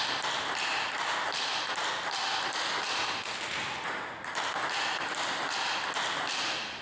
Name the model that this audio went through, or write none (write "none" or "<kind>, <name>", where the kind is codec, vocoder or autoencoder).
none